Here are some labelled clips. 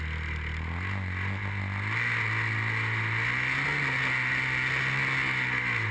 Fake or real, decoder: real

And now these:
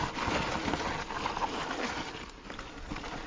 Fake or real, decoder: real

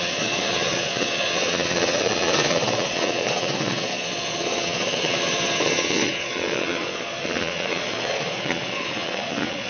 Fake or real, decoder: fake, vocoder, Vocos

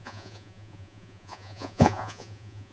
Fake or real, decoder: fake, vocoder, Vocos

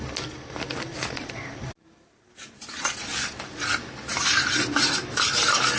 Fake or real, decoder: real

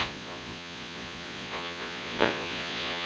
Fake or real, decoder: fake, vocoder, Vocos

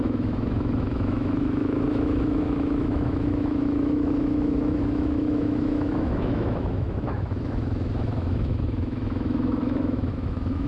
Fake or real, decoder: fake, autoencoder, DAC-VAE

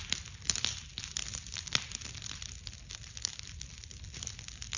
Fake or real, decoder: real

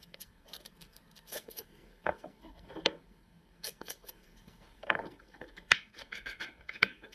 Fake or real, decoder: fake, codec, SNAC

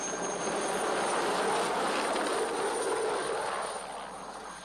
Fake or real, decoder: real